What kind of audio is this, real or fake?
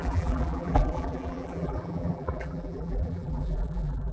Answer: fake